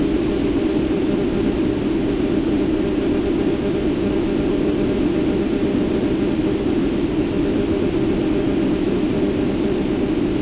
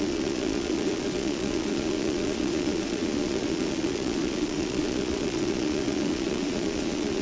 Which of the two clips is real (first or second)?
first